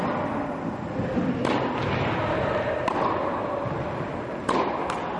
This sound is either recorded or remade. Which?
recorded